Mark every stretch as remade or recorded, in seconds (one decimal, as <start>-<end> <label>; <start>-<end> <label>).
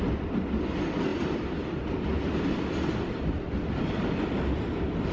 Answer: 0.0-5.1 recorded